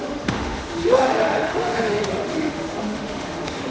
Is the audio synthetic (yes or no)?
yes